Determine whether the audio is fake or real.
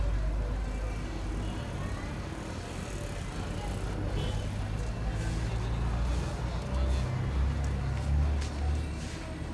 real